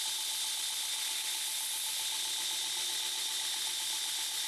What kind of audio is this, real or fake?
real